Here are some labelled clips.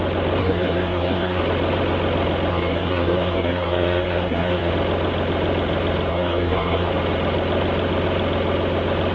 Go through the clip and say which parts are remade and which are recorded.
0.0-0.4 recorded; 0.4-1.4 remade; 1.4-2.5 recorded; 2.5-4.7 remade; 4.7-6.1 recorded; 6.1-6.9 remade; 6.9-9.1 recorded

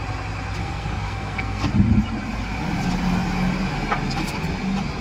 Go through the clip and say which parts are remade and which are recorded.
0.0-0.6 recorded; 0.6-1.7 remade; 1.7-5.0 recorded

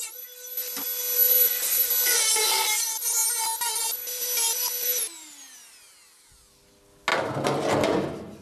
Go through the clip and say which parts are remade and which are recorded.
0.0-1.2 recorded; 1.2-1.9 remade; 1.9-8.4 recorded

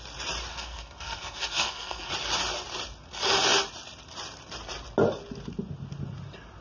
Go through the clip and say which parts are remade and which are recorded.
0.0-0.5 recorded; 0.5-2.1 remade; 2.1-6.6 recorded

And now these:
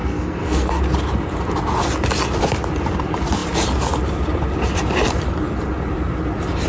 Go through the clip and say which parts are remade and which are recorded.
0.0-0.8 remade; 0.8-6.7 recorded